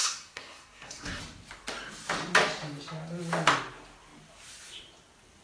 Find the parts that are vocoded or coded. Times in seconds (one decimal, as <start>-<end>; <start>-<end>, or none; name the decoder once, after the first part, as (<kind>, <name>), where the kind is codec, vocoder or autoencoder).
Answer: 0.0-1.2 (codec, SNAC)